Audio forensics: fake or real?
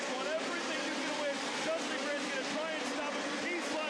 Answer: real